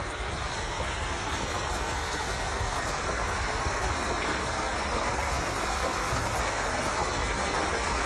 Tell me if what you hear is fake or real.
fake